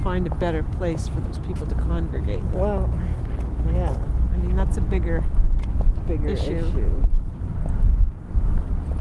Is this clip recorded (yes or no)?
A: yes